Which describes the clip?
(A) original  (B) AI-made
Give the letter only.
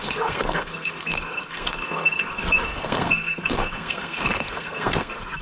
B